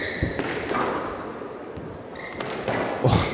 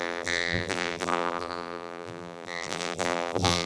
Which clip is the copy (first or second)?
second